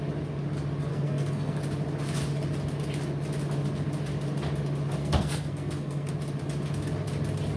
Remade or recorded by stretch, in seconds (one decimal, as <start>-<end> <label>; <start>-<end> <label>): 0.0-0.9 recorded; 0.9-1.6 remade; 1.6-5.0 recorded; 5.0-6.1 remade; 6.1-7.6 recorded